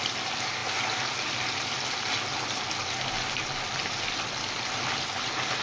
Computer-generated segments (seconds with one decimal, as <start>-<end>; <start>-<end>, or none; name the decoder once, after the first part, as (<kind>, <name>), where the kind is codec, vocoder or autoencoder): none